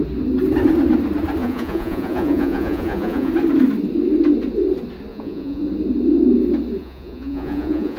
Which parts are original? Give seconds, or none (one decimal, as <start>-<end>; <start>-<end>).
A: 0.0-1.4; 3.3-5.1; 5.6-6.8